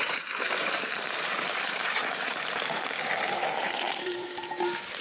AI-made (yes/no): yes